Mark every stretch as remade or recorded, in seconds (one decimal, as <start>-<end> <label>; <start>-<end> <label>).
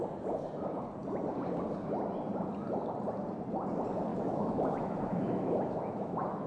0.0-4.1 recorded; 4.1-6.5 remade